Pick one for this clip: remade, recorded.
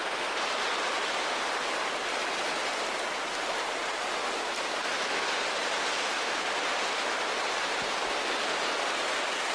recorded